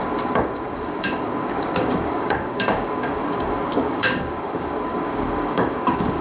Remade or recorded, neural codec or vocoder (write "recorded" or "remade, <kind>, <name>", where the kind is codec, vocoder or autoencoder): remade, codec, DAC